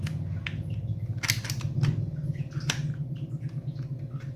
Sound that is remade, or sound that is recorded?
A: recorded